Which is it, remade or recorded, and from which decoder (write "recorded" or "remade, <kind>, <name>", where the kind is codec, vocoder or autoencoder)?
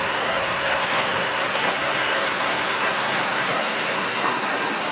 remade, codec, SNAC